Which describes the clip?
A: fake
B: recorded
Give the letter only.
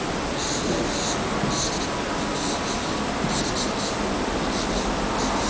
B